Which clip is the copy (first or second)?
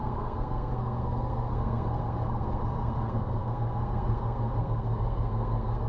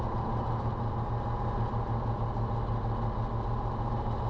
first